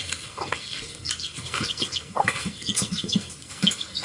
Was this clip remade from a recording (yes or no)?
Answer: yes